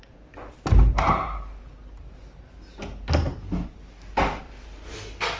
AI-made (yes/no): no